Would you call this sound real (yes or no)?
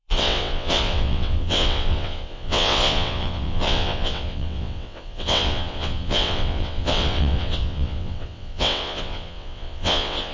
no